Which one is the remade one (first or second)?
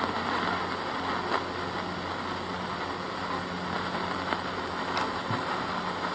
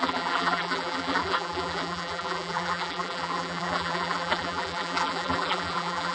second